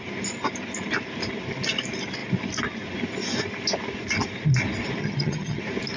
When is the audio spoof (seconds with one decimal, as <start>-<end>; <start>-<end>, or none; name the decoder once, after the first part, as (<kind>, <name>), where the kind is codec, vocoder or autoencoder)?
5.0-5.6 (vocoder, HiFi-GAN)